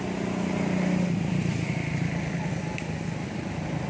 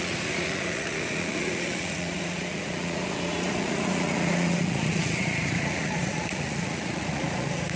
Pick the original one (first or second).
first